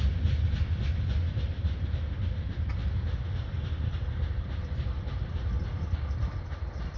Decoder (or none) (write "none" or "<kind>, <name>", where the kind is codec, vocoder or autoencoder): none